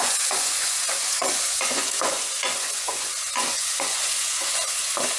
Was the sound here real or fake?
fake